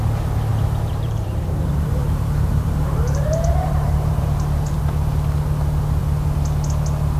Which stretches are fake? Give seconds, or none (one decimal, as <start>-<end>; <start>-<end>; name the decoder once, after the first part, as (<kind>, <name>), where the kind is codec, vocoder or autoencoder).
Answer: 0.5-4.8 (vocoder, BigVGAN v2)